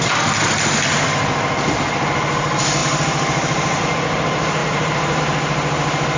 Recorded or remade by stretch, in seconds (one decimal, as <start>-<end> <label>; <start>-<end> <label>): 0.0-2.8 recorded; 2.8-3.8 remade; 3.8-4.6 recorded; 4.6-5.2 remade; 5.2-6.2 recorded